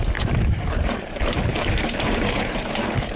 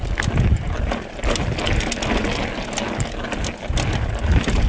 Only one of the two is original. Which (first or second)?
second